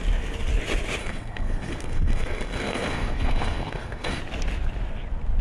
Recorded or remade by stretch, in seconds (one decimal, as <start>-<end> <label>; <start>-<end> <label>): 0.0-1.0 recorded; 1.0-4.2 remade; 4.2-5.4 recorded